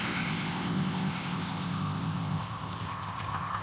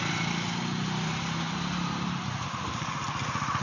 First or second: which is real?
second